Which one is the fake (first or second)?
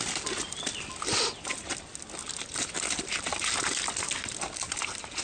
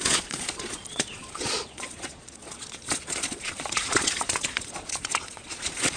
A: second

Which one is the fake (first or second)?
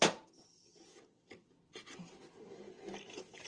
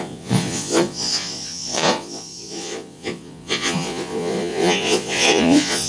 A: second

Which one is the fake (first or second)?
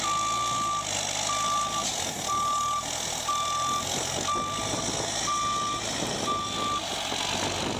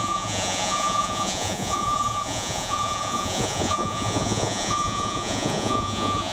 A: second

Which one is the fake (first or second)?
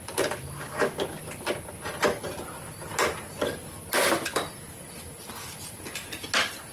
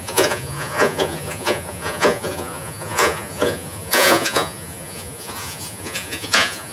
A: second